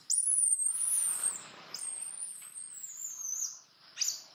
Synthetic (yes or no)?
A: no